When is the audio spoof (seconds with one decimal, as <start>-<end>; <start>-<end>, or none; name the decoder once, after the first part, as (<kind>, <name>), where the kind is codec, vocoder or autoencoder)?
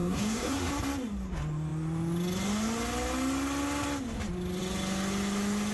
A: 0.0-0.7 (codec, SNAC)